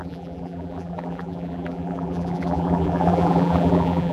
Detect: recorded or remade remade